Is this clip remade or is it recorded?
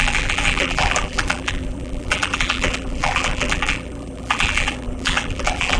remade